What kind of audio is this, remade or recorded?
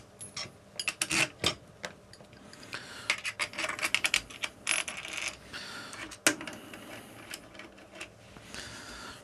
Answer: recorded